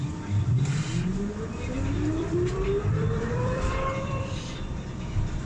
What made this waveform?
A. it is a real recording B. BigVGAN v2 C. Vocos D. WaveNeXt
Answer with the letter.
B